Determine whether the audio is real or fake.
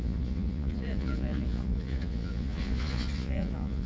fake